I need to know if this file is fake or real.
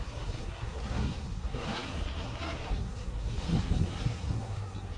fake